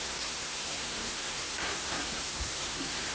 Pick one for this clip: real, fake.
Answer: fake